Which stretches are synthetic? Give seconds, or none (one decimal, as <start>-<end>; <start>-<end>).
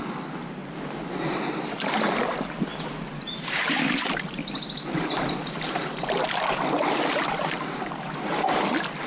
none